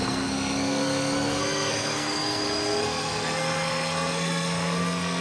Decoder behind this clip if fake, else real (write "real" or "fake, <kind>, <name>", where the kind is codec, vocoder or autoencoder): fake, codec, SNAC